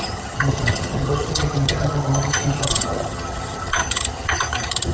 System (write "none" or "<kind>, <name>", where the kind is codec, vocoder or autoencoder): vocoder, HiFi-GAN